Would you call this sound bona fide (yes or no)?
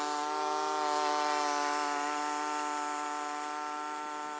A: yes